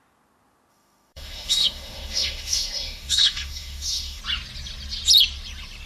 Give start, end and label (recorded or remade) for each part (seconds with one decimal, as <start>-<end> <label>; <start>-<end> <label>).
0.0-0.7 recorded; 0.7-4.2 remade; 4.2-5.9 recorded